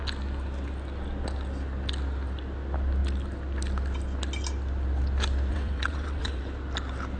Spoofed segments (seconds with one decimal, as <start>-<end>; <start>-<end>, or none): 5.5-6.4